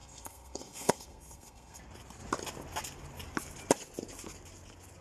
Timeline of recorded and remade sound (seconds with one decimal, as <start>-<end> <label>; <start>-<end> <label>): 0.0-1.8 remade; 1.8-5.0 recorded